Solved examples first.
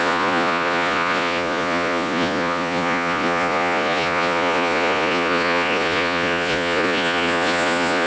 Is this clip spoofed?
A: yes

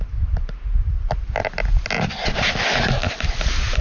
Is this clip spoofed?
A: no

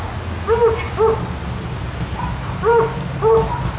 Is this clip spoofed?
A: no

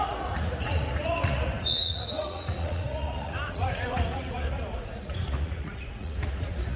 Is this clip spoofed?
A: yes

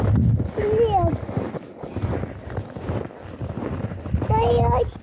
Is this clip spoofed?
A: no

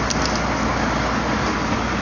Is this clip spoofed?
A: no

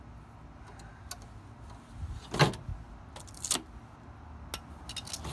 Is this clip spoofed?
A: no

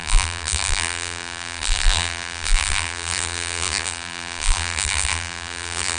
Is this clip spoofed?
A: yes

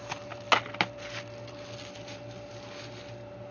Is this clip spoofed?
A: no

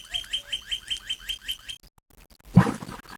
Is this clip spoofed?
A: no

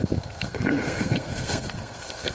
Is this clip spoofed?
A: yes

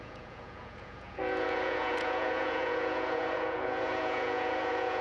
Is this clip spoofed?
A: yes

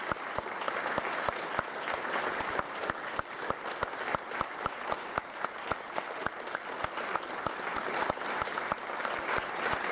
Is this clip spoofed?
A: no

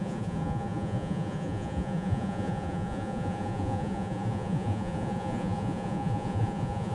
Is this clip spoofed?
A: yes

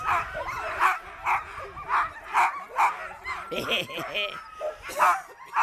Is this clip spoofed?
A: no